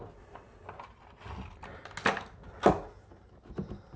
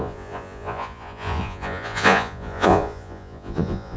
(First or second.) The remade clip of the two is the second